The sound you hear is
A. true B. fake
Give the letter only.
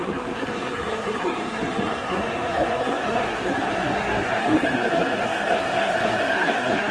B